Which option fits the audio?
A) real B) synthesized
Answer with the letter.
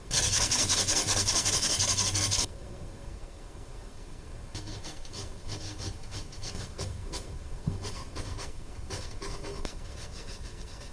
B